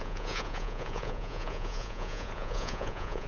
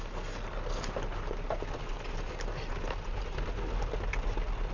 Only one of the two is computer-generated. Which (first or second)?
first